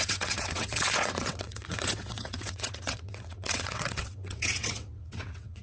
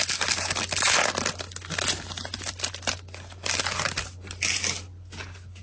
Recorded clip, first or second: second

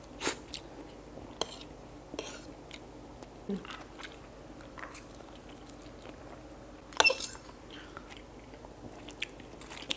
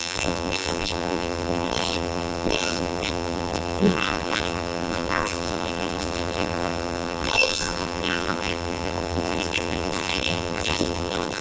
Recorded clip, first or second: first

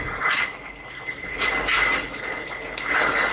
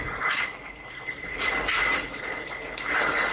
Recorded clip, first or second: first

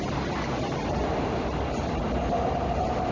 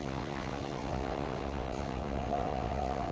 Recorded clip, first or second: first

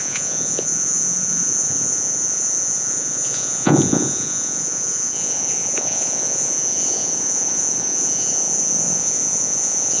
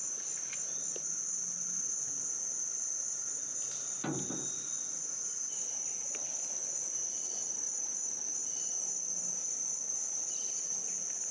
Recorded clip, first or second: second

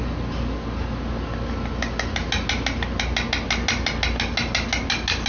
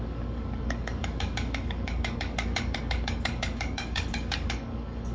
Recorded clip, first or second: first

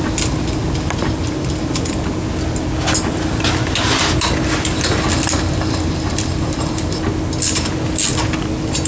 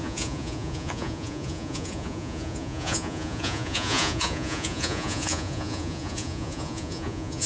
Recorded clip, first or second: first